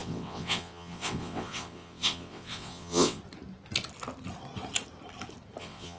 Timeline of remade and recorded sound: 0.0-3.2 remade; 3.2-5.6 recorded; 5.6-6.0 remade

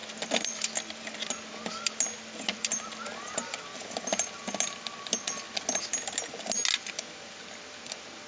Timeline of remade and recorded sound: 0.0-8.3 recorded

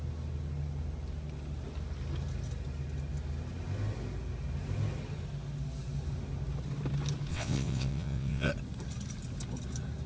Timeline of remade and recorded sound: 0.0-7.3 recorded; 7.3-8.5 remade; 8.5-10.1 recorded

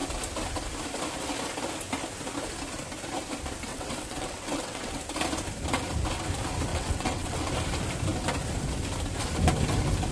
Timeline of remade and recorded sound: 0.0-3.7 recorded; 3.7-5.0 remade; 5.0-6.7 recorded; 6.7-7.5 remade; 7.5-10.1 recorded